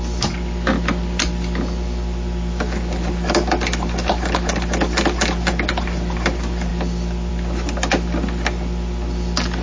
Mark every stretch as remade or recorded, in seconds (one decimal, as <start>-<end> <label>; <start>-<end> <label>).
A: 0.0-9.6 recorded